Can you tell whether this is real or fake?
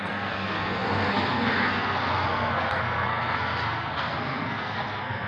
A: fake